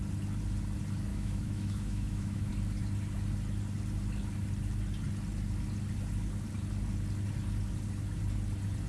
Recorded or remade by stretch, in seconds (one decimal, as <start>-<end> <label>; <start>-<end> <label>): 0.0-1.1 recorded; 1.1-2.5 remade; 2.5-8.9 recorded

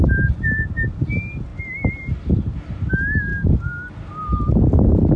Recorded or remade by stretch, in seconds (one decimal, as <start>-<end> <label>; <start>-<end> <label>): 0.0-5.2 recorded

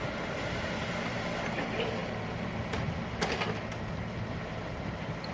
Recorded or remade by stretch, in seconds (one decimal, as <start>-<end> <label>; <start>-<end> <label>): 0.0-5.3 recorded